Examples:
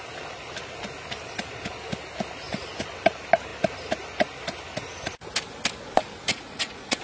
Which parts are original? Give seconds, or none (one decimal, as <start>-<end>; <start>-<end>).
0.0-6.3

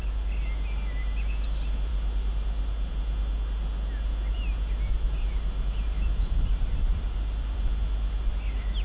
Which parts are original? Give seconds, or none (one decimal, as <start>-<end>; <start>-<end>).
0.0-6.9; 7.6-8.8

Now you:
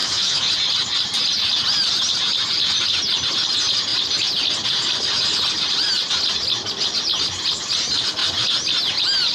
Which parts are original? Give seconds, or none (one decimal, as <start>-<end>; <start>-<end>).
0.5-9.3

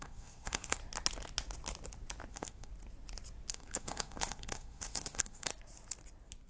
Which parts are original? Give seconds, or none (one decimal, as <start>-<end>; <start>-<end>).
0.8-2.3; 2.7-3.5; 5.5-6.5

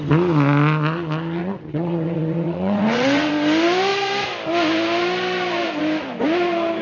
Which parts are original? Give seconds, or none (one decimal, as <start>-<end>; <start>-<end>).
0.0-1.4; 3.3-6.8

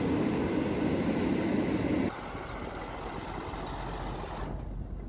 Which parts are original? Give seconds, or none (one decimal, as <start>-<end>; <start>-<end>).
0.0-5.1